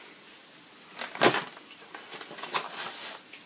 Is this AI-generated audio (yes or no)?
no